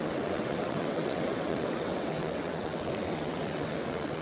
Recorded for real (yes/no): no